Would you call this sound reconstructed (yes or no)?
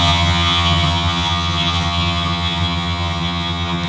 yes